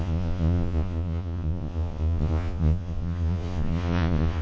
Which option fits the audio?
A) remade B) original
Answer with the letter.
A